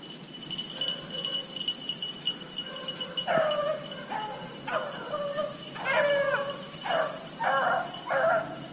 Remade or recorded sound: recorded